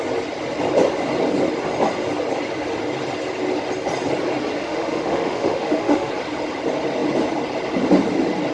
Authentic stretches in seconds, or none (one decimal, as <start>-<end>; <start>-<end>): 0.0-4.6; 6.1-8.5